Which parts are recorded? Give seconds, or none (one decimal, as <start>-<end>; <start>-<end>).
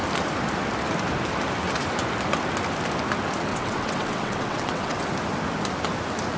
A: 0.0-3.5; 5.0-6.4